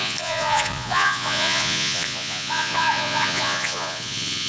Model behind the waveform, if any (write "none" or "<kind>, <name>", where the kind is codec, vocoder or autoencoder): vocoder, Vocos